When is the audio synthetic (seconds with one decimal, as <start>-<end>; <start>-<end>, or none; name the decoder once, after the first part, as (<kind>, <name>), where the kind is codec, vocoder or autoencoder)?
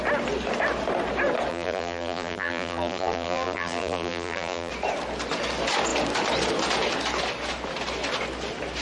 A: 1.5-4.7 (vocoder, BigVGAN v2)